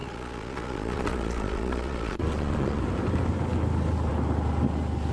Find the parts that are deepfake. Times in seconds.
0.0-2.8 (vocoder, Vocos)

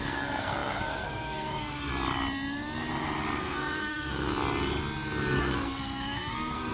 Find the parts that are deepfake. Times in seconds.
0.0-1.9 (codec, SNAC); 3.4-4.3; 5.4-6.7